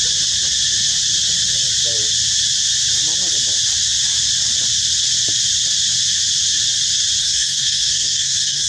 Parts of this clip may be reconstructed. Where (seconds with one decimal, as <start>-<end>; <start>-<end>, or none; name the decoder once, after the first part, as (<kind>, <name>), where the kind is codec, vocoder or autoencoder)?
7.2-8.7 (codec, SNAC)